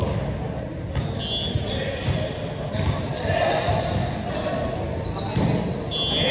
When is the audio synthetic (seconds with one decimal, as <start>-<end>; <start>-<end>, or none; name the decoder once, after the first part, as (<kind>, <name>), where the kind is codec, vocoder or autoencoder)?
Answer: none